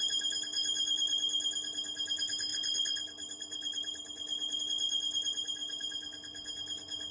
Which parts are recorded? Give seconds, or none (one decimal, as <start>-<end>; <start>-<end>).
0.0-2.5; 4.6-7.1